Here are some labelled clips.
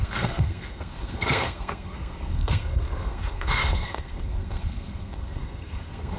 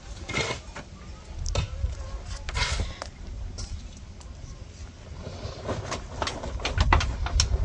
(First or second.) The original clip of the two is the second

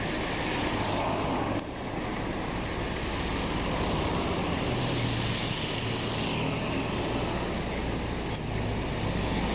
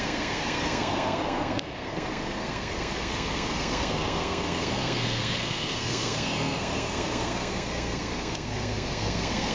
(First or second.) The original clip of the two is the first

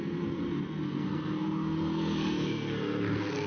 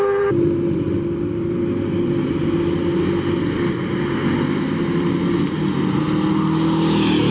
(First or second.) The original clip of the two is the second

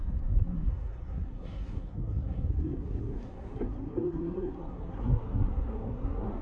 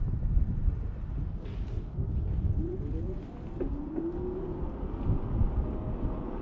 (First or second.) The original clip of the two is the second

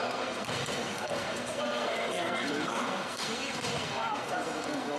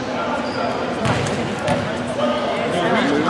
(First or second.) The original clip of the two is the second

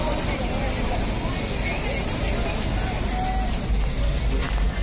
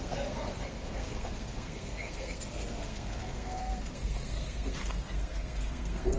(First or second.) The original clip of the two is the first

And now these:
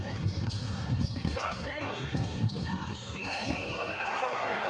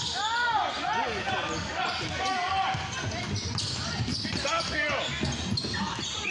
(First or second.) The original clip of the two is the second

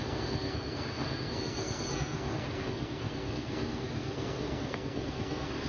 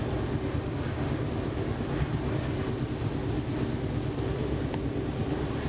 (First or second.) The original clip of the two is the second